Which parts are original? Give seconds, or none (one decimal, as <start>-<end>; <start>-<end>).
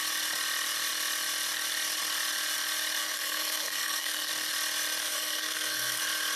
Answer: 0.0-3.0; 4.3-5.0; 6.0-6.4